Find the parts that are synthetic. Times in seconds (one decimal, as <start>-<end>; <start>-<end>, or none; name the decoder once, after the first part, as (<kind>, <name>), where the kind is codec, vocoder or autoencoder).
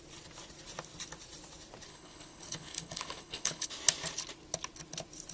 1.9-3.7 (codec, HILCodec)